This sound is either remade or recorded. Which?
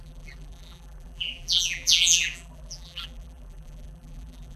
remade